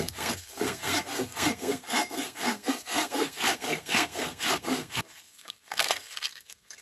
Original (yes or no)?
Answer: no